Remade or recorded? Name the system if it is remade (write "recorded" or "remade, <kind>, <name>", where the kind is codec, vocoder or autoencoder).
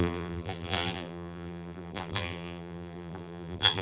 remade, vocoder, BigVGAN v2